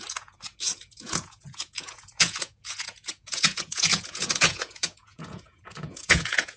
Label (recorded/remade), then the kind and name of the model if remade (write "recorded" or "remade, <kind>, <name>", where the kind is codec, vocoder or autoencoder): remade, vocoder, Vocos